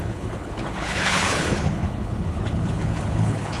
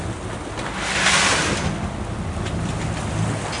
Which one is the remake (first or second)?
first